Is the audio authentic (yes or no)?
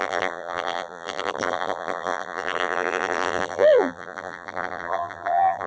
no